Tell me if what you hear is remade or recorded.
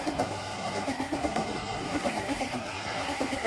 remade